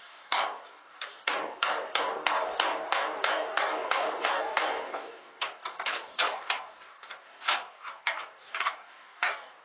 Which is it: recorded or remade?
remade